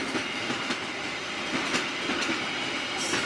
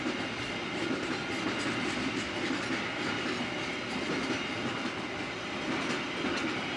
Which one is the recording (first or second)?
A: second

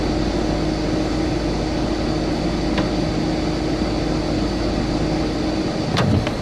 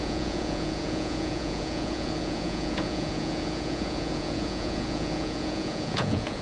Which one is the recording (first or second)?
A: first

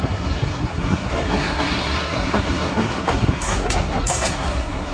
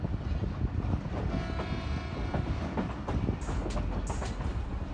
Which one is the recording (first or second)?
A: second